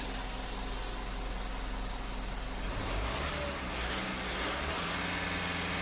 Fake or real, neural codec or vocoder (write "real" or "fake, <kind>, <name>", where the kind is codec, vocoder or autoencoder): real